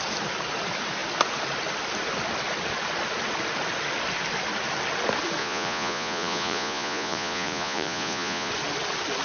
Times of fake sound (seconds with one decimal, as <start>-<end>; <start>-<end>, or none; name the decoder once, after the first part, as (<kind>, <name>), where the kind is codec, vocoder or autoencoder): 5.4-8.5 (vocoder, Vocos)